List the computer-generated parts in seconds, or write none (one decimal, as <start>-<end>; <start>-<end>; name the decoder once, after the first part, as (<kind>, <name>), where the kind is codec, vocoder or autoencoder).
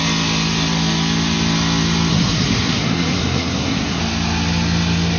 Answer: 2.1-4.0 (codec, SNAC)